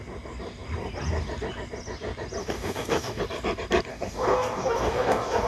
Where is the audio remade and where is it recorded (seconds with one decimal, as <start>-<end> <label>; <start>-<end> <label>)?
0.0-2.4 recorded; 2.4-3.2 remade; 3.2-3.9 recorded; 3.9-5.5 remade